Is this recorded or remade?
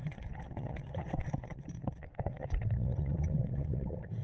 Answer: remade